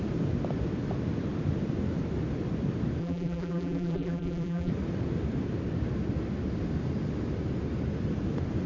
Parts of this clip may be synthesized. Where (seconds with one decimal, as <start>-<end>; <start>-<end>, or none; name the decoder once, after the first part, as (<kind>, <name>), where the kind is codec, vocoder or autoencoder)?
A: 3.0-4.7 (vocoder, BigVGAN v2)